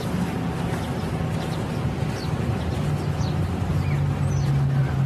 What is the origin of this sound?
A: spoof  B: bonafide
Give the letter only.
B